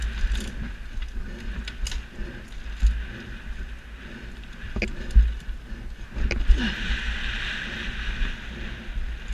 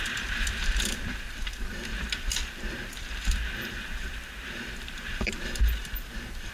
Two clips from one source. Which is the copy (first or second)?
second